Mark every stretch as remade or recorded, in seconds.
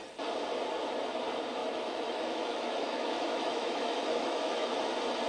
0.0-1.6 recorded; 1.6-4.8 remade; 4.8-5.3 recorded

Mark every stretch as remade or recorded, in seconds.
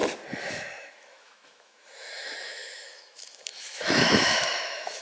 0.0-0.5 recorded; 0.5-5.0 remade